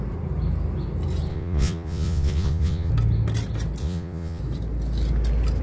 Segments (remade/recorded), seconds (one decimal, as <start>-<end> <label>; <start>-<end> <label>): 0.0-1.3 recorded; 1.3-2.9 remade; 2.9-3.8 recorded; 3.8-4.4 remade; 4.4-5.6 recorded